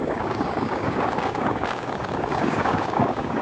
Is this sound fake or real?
fake